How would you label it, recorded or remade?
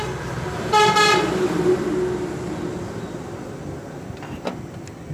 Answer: recorded